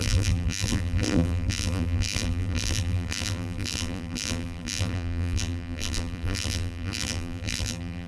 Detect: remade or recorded remade